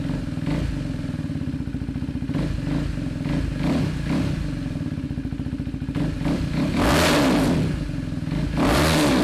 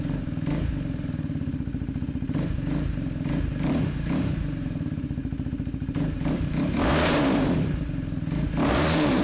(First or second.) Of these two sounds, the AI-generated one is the second